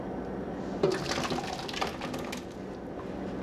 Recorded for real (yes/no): yes